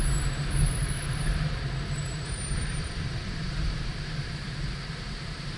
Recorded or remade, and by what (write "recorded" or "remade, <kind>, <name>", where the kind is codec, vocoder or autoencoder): remade, vocoder, BigVGAN v2